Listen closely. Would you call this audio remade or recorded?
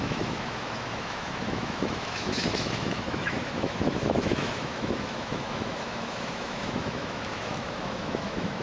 remade